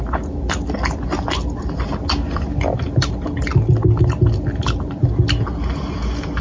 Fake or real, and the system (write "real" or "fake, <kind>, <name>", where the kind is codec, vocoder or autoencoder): real